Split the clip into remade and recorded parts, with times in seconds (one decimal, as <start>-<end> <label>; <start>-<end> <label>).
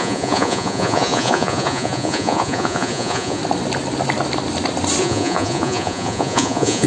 0.0-3.4 remade; 3.4-5.0 recorded; 5.0-6.9 remade